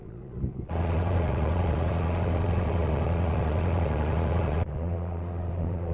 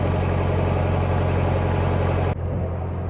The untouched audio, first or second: second